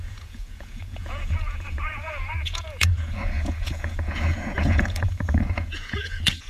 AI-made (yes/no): yes